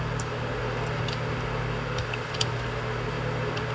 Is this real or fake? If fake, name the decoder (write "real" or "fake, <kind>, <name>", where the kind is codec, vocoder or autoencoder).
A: real